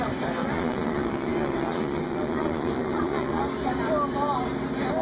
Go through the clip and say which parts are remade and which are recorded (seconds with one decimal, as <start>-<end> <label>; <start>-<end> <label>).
0.0-0.4 recorded; 0.4-3.4 remade; 3.4-5.0 recorded